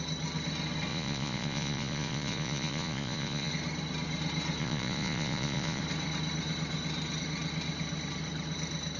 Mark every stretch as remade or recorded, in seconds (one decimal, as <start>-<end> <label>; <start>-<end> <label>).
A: 0.0-0.9 recorded; 0.9-3.5 remade; 3.5-4.6 recorded; 4.6-5.8 remade; 5.8-9.0 recorded